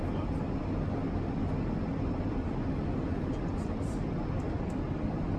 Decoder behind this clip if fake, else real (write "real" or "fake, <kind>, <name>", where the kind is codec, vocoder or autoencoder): real